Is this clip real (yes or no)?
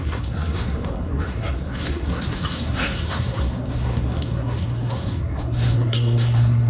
no